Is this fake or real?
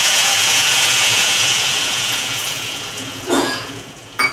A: fake